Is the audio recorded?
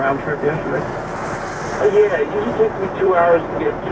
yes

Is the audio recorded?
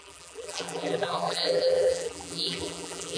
no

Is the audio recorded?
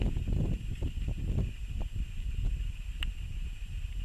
yes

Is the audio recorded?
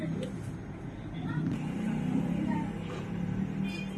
yes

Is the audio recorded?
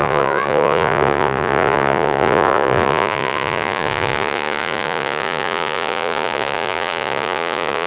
no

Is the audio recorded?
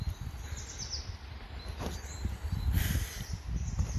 yes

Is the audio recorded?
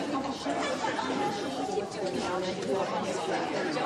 no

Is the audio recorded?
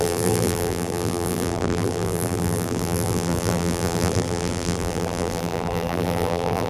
no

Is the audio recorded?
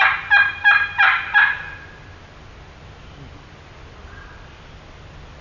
yes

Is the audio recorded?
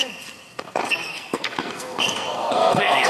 no